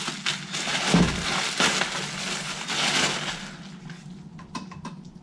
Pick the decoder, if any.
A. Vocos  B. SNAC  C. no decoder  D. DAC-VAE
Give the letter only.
C